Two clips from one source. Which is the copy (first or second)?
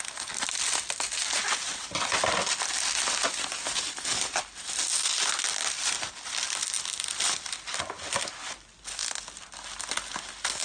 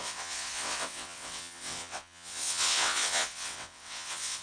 second